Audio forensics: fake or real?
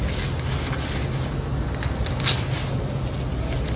real